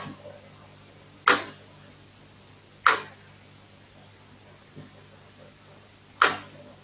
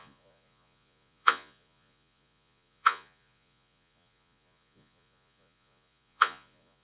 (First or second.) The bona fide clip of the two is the first